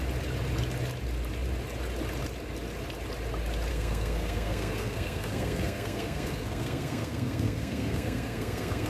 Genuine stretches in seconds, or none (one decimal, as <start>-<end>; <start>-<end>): 0.0-3.7